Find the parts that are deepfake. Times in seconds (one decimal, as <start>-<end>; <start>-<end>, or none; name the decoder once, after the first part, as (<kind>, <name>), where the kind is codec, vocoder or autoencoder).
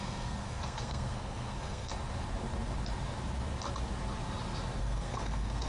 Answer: 0.0-1.9 (codec, SNAC); 4.8-5.7